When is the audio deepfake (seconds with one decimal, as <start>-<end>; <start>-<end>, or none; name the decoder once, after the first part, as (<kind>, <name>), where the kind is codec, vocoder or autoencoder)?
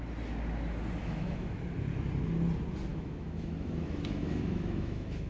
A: 1.0-1.6 (autoencoder, DAC-VAE); 2.9-5.3